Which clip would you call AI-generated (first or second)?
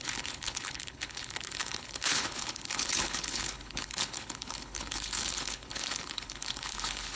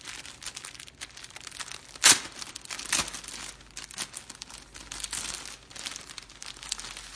first